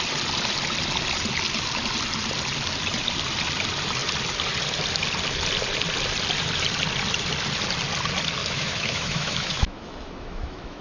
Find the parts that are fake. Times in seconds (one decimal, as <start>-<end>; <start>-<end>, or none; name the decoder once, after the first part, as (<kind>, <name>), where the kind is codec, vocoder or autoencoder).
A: 8.4-10.8 (autoencoder, DAC-VAE)